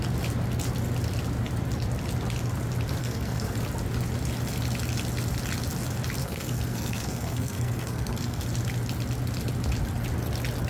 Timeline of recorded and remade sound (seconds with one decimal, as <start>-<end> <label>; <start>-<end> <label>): 0.0-3.0 recorded; 3.0-3.6 remade; 3.6-6.2 recorded; 6.2-8.4 remade; 8.4-10.7 recorded